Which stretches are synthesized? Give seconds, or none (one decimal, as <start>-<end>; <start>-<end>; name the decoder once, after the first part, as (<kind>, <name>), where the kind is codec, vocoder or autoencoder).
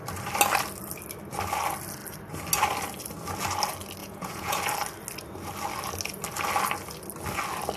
4.0-4.6 (vocoder, Vocos)